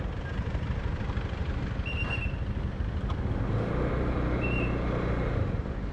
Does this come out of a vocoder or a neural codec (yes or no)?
no